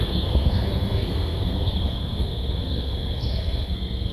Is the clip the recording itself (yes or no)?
no